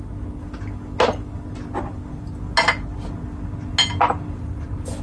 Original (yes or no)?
yes